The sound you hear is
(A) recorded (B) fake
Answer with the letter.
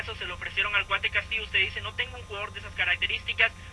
A